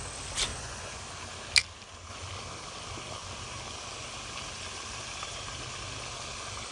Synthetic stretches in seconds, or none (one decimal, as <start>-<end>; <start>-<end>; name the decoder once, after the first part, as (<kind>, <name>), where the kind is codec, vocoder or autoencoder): 0.5-1.0 (vocoder, Vocos)

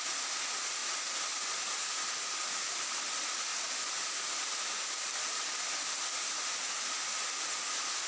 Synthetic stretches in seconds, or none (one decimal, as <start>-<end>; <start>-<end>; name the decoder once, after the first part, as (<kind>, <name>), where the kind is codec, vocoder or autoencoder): none

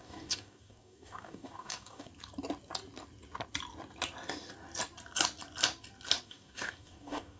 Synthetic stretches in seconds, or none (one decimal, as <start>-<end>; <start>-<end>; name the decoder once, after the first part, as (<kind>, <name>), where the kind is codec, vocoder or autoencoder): 0.0-2.1 (codec, DAC); 6.2-7.4

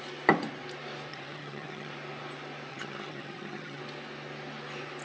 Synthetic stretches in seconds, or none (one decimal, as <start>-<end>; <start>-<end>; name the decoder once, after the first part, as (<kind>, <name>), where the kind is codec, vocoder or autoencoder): 1.1-1.9 (vocoder, HiFi-GAN); 2.7-3.8